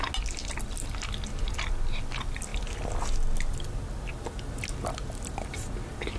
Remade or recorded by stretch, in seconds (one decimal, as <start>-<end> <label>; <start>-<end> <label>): 0.0-6.2 recorded